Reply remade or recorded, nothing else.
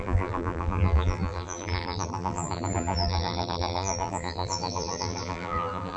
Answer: remade